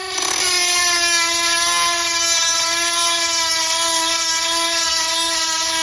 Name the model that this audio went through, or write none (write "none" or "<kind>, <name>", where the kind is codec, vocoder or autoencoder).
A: none